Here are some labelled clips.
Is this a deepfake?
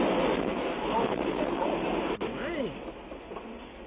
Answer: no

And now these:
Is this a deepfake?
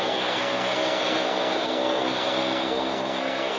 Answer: yes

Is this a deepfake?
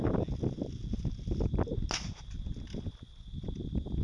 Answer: no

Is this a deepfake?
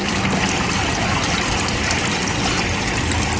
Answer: yes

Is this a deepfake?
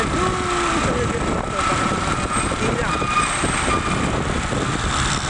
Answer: no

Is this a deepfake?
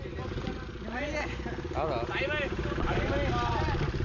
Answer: no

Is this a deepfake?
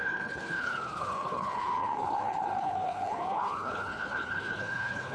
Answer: yes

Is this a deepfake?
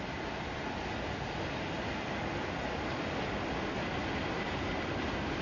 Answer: no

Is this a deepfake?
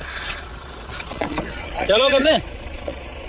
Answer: yes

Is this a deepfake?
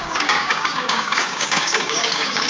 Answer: yes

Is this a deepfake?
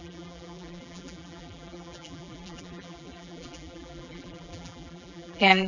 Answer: yes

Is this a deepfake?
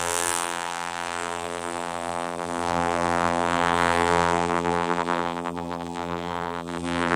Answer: yes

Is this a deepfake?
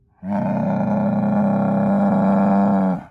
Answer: no